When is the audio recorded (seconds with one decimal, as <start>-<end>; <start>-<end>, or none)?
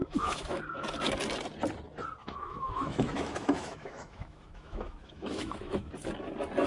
0.6-2.2; 5.9-6.7